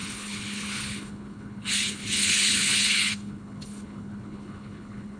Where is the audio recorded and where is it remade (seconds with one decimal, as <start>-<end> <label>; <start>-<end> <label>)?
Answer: 0.0-5.2 remade